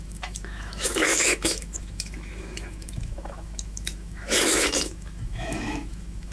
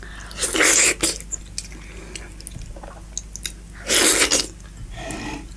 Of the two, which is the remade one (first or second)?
first